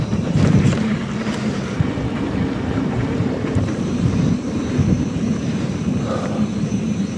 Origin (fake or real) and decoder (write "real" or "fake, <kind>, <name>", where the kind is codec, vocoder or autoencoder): fake, vocoder, BigVGAN v2